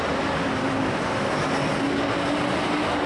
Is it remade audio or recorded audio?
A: recorded